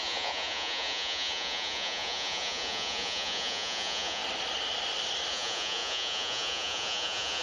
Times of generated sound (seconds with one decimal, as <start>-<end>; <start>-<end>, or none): 0.0-4.2; 5.3-7.4

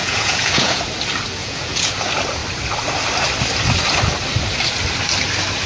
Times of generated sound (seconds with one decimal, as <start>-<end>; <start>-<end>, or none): 0.0-0.8; 1.4-1.9